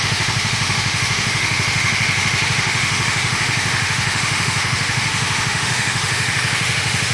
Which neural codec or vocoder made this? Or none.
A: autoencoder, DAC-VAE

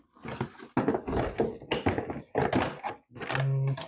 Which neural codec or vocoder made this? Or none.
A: none